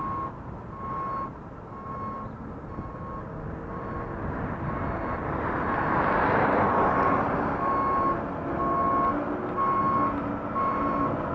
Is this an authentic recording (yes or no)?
yes